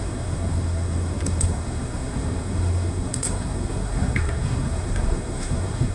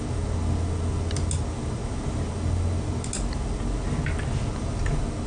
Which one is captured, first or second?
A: second